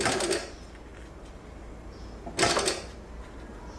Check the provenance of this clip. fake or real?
real